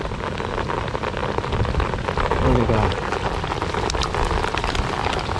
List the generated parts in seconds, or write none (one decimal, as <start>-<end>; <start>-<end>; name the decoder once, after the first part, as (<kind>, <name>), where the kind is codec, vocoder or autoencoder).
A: none